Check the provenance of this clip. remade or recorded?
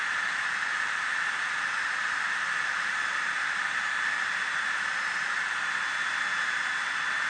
recorded